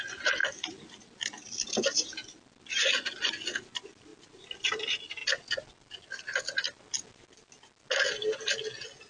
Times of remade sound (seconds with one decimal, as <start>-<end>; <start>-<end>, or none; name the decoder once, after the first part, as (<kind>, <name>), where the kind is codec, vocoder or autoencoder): none